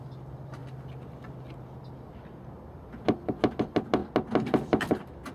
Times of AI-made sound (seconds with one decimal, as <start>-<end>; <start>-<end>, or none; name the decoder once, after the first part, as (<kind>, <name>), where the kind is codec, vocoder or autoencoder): none

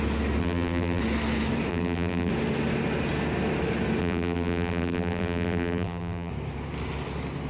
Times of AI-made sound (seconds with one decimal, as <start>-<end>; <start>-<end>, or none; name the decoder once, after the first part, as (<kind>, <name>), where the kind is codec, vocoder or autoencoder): 0.4-1.0 (vocoder, BigVGAN v2); 1.7-2.3; 4.0-6.3

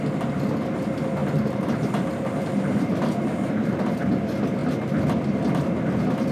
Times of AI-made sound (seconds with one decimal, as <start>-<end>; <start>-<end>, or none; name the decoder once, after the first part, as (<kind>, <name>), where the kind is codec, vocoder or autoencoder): 1.2-3.9 (vocoder, BigVGAN v2)